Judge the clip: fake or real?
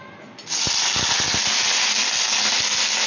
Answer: real